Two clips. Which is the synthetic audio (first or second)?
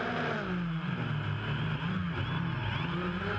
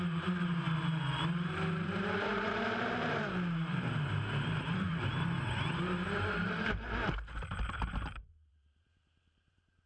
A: second